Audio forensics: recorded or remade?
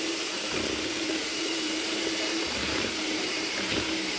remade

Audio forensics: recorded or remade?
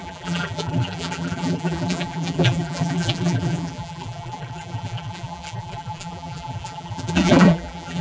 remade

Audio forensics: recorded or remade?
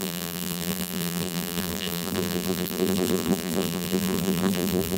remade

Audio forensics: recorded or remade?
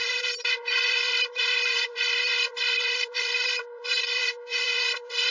remade